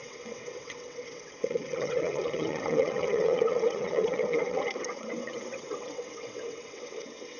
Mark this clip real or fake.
fake